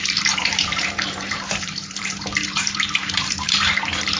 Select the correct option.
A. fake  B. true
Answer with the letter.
A